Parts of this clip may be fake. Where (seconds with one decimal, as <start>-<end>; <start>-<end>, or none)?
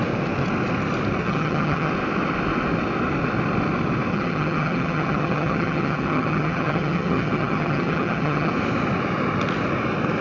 1.2-1.9; 4.1-8.5